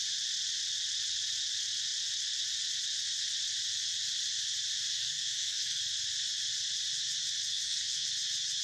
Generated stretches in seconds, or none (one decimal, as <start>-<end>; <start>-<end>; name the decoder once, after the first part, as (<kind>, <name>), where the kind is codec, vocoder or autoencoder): 4.9-5.8 (codec, SNAC); 7.5-8.1